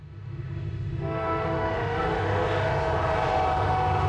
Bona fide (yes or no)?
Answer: no